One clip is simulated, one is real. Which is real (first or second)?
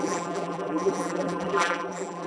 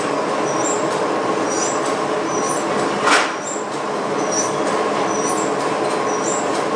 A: second